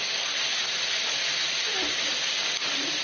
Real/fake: real